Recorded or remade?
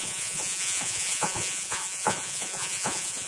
remade